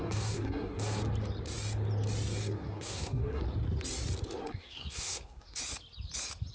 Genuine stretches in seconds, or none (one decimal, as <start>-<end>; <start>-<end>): 1.0-2.4; 3.4-4.4; 5.6-6.5